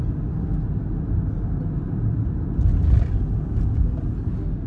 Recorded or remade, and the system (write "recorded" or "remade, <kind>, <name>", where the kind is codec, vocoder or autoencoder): recorded